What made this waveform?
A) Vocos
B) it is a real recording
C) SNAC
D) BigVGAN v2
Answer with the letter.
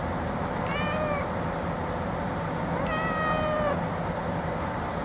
B